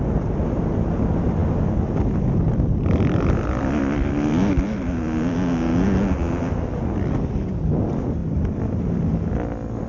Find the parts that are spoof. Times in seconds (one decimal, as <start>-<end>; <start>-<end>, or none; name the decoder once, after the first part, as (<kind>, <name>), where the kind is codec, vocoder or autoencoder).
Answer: none